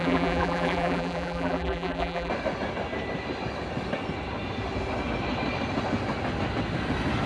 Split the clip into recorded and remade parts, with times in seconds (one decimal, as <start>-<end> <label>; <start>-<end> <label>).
0.0-2.3 remade; 2.3-7.3 recorded